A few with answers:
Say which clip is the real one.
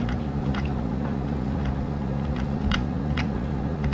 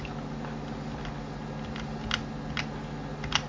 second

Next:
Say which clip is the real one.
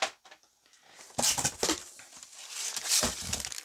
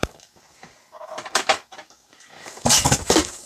first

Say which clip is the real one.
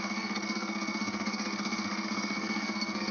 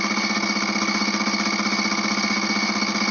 second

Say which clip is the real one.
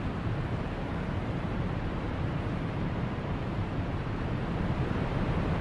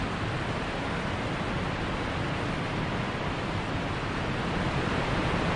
second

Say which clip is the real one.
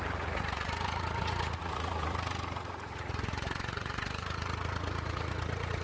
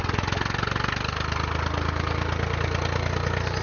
second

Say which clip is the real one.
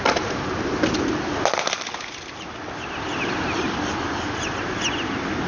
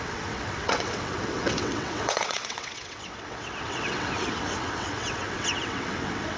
first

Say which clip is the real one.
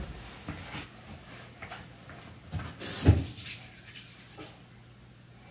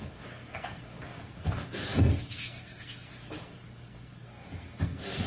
first